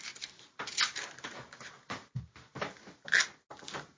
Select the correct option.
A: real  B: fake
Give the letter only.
A